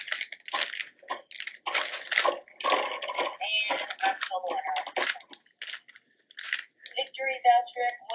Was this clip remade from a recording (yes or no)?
no